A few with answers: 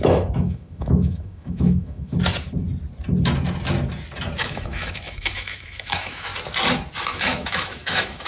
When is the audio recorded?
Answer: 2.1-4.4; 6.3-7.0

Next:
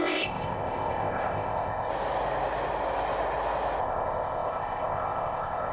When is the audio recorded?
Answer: 1.9-3.8

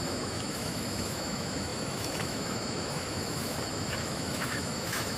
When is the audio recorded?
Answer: none

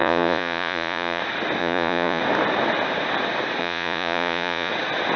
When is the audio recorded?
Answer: 1.2-1.6; 2.2-3.6; 4.7-5.2

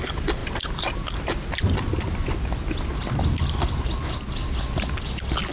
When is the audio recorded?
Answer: 0.0-5.5

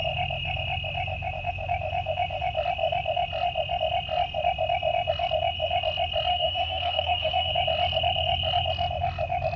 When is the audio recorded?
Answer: 0.0-6.3; 7.5-9.6

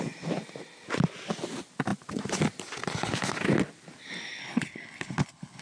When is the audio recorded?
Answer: 0.0-4.4